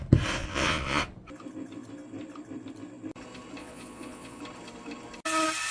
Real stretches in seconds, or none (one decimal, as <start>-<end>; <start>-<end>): 0.0-0.4; 1.0-3.6; 4.4-5.7